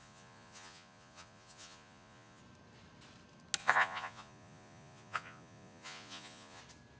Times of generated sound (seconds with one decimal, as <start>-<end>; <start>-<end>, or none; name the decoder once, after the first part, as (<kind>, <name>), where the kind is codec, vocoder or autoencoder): 0.0-2.4 (vocoder, Vocos); 3.6-6.6